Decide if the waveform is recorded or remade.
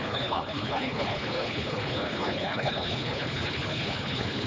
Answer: remade